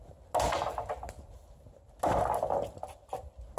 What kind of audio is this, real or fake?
real